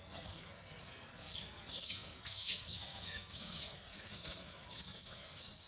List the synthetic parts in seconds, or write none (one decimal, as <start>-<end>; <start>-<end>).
0.0-5.7